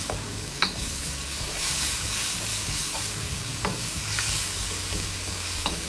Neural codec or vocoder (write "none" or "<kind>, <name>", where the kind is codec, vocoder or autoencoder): codec, DAC